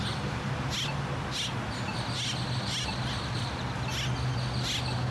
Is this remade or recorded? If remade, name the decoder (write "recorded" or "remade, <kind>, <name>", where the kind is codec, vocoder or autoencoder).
recorded